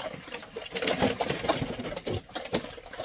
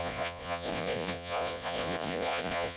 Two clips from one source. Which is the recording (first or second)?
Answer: first